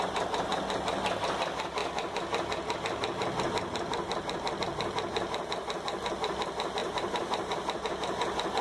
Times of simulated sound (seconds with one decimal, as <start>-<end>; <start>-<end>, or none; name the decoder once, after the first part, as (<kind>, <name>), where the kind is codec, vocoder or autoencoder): 6.8-7.8 (vocoder, BigVGAN v2)